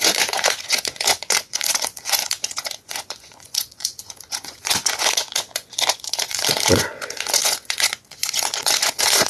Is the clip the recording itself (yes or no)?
no